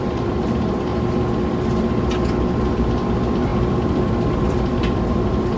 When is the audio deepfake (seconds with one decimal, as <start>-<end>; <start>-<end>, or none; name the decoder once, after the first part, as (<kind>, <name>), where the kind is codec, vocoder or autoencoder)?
0.0-0.9 (vocoder, BigVGAN v2); 2.6-5.6